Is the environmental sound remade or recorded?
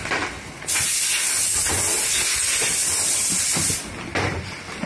recorded